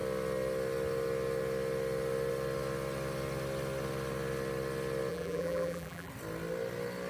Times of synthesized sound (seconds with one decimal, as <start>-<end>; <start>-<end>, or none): 5.1-6.1